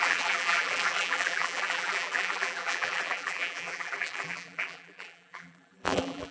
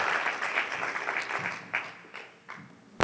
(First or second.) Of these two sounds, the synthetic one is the first